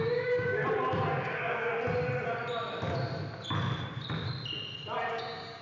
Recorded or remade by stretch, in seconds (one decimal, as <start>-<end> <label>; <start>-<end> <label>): 0.0-0.6 remade; 0.6-1.1 recorded; 1.1-1.7 remade; 1.7-5.1 recorded; 5.1-5.6 remade

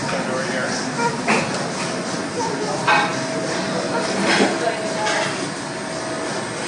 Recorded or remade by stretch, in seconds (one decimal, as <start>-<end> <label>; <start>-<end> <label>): 0.0-6.7 recorded

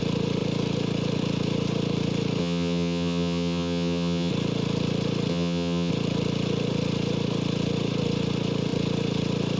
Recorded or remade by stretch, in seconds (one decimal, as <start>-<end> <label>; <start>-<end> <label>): 0.0-2.4 recorded; 2.4-4.3 remade; 4.3-5.3 recorded; 5.3-5.9 remade; 5.9-9.6 recorded

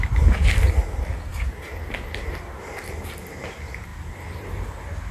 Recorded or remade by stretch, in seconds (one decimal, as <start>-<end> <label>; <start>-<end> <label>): 0.0-5.1 recorded

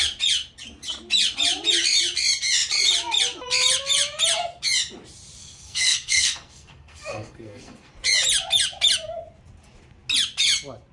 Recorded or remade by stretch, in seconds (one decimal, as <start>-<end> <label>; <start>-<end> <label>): 0.0-5.4 recorded; 5.4-7.9 remade; 7.9-10.9 recorded

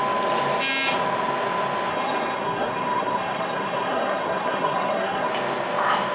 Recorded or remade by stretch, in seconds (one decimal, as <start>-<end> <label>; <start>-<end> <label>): 0.0-1.9 recorded; 1.9-5.3 remade; 5.3-6.1 recorded

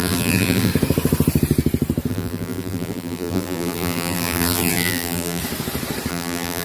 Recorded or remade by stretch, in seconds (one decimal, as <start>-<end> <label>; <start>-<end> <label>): 0.0-0.7 remade; 0.7-2.1 recorded; 2.1-5.4 remade; 5.4-6.1 recorded; 6.1-6.6 remade

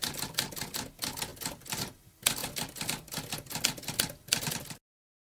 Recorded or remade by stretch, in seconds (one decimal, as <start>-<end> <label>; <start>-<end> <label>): 0.0-5.2 recorded